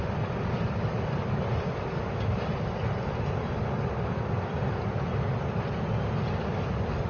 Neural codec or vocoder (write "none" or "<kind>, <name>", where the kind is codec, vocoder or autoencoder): none